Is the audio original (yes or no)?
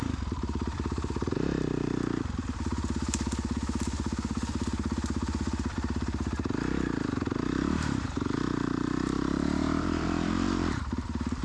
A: no